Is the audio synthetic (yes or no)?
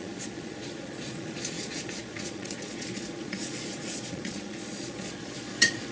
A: yes